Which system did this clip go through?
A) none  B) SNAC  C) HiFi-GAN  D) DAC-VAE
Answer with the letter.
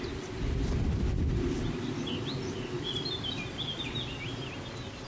A